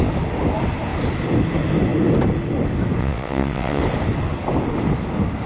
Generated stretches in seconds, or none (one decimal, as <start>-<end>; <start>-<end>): 3.0-3.8